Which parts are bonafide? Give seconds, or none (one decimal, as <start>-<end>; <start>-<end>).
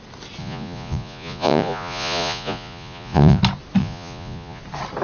0.0-0.4; 3.4-3.8; 4.6-5.0